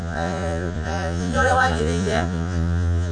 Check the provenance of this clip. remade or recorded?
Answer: remade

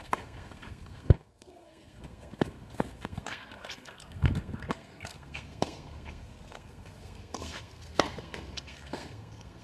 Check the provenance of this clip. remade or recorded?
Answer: remade